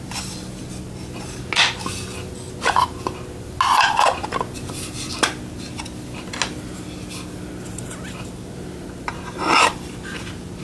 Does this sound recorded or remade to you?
recorded